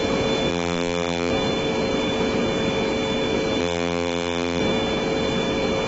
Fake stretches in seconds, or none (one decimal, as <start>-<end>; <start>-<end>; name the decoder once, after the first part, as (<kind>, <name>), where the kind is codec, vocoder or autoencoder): 0.5-1.3 (vocoder, BigVGAN v2); 3.6-4.6